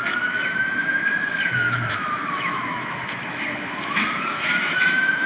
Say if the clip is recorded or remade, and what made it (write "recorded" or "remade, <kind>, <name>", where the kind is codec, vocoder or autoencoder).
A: remade, autoencoder, DAC-VAE